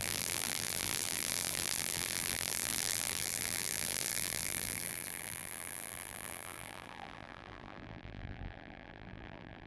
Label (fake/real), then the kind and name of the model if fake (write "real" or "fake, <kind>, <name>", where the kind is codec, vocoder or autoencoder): fake, vocoder, BigVGAN v2